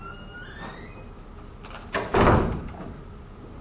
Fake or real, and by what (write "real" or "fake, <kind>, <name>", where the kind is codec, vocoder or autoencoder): real